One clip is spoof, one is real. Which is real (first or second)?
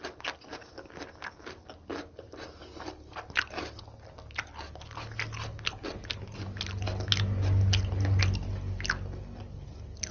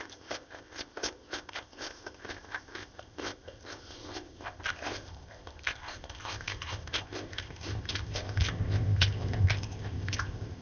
first